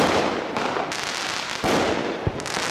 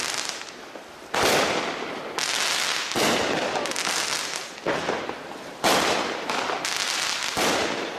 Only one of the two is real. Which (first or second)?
first